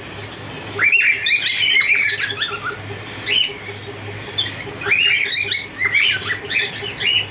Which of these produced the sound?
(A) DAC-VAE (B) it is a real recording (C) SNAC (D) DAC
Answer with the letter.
B